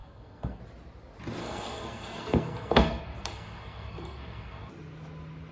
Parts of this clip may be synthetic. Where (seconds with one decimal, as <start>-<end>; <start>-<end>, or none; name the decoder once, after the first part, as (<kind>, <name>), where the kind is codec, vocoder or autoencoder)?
0.0-0.6 (codec, SNAC); 1.4-4.7

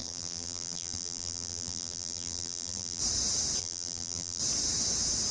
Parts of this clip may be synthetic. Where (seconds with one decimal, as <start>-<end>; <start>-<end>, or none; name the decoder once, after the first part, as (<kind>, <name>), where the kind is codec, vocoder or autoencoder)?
0.0-3.0 (vocoder, BigVGAN v2); 3.6-4.4

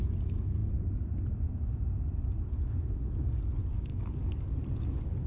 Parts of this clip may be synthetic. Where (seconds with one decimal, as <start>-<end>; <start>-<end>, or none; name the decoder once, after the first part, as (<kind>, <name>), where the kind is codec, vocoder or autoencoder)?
3.9-4.6 (codec, DAC)

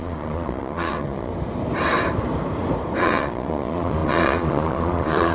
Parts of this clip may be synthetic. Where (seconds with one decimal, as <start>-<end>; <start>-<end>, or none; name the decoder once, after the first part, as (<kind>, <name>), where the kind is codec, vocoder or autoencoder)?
0.0-1.3 (vocoder, Vocos); 3.0-5.3

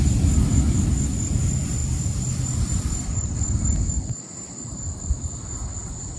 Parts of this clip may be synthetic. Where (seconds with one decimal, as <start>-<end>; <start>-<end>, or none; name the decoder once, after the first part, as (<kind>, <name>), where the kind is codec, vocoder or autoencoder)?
none

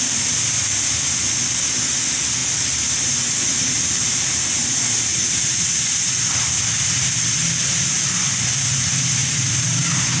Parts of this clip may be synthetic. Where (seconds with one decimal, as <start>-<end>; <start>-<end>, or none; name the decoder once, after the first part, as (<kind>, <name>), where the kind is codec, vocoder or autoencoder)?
none

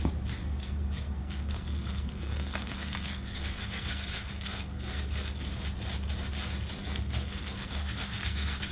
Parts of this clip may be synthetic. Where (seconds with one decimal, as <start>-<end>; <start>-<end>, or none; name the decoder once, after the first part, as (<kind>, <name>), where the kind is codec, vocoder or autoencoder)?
0.4-5.5 (codec, SNAC); 6.8-8.7